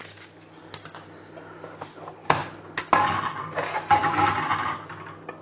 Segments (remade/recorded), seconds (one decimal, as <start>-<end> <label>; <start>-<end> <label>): 0.0-5.4 recorded